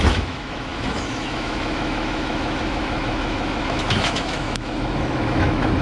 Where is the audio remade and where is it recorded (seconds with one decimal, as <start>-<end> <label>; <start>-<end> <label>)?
0.0-5.8 remade